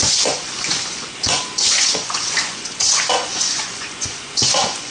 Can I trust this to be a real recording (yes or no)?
no